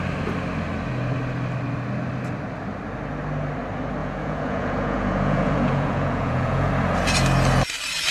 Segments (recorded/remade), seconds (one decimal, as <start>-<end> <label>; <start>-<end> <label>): 0.0-4.0 recorded; 4.0-6.7 remade; 6.7-8.1 recorded